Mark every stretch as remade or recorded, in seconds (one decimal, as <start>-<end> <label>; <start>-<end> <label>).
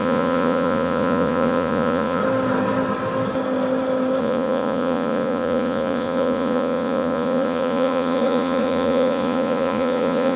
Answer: 0.0-2.2 remade; 2.2-4.2 recorded; 4.2-10.4 remade